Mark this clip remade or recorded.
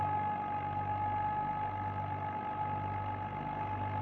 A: recorded